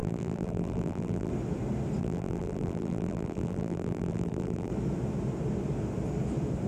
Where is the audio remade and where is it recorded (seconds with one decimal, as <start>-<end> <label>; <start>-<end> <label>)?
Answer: 0.0-1.3 remade; 1.3-2.0 recorded; 2.0-4.7 remade; 4.7-6.7 recorded